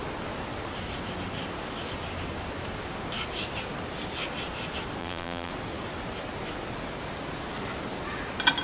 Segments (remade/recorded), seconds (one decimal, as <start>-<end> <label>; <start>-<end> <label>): 0.0-5.0 recorded; 5.0-5.5 remade; 5.5-8.6 recorded